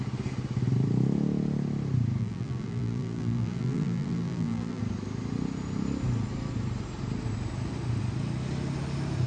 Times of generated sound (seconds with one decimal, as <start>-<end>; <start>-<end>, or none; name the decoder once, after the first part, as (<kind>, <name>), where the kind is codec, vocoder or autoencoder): 2.2-4.8 (vocoder, BigVGAN v2)